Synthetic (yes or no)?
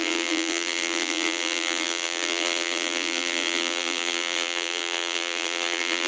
yes